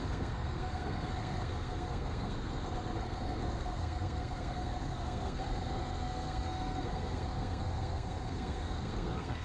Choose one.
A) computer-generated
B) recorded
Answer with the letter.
A